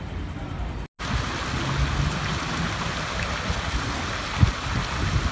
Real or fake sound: real